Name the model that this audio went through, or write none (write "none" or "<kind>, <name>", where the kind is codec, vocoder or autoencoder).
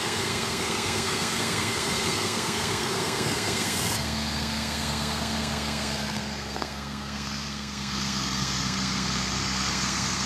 codec, SNAC